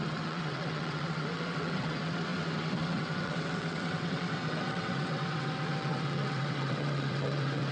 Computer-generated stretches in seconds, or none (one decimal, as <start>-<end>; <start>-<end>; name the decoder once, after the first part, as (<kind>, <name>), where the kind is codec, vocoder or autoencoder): 0.0-7.7 (vocoder, WaveNeXt)